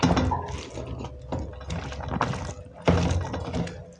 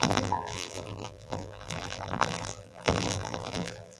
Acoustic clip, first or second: first